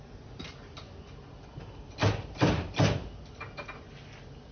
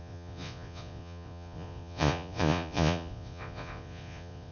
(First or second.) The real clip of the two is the first